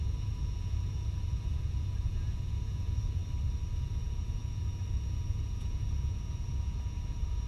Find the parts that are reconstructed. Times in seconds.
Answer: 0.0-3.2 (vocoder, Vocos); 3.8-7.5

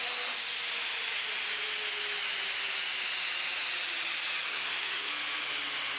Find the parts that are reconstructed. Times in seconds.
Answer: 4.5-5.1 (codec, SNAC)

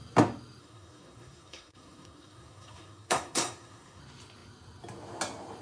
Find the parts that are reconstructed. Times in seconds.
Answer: 0.6-4.0 (codec, SNAC)